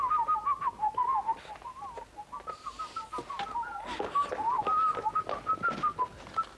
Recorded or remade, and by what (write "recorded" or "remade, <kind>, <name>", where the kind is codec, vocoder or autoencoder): recorded